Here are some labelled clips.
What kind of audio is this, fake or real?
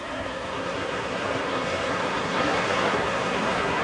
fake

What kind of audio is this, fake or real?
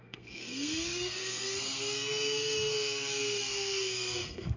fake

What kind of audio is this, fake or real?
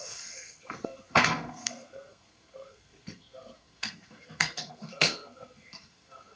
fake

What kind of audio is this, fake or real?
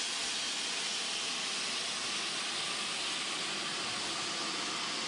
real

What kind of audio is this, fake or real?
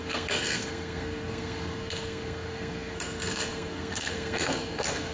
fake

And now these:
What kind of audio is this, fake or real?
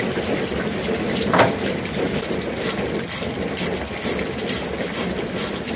real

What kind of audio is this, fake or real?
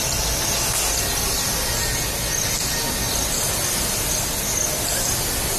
real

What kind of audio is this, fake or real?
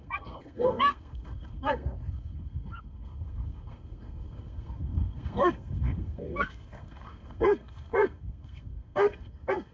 fake